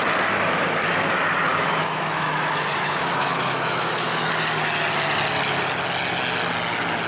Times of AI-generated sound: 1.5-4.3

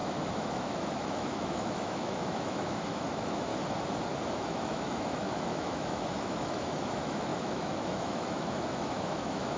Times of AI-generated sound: 0.0-3.5; 4.4-9.6

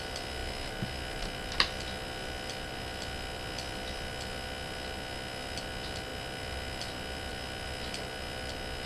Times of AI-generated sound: none

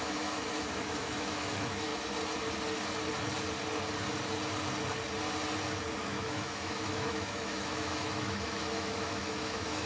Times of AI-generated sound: 0.0-1.9; 6.0-9.9

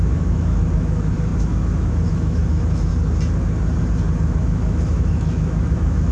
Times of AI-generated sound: 0.0-2.9; 4.4-6.1

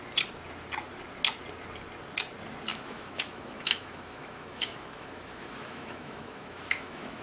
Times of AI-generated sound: 2.7-7.2

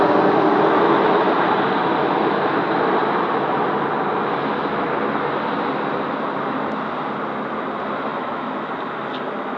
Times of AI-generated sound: 8.1-8.7